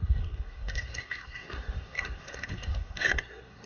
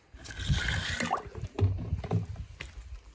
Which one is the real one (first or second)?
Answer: second